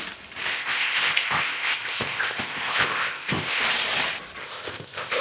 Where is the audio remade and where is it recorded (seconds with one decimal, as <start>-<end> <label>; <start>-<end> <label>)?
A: 0.0-0.5 recorded; 0.5-3.6 remade; 3.6-4.4 recorded; 4.4-5.2 remade